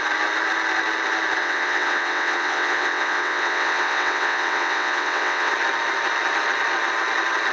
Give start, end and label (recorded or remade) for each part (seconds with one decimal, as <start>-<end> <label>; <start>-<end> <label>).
0.0-1.4 recorded; 1.4-5.5 remade; 5.5-7.5 recorded